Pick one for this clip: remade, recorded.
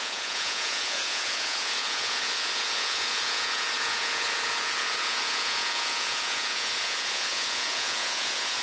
remade